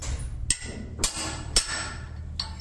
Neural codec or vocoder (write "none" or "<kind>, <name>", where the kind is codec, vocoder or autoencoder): none